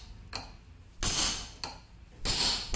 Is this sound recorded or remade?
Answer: recorded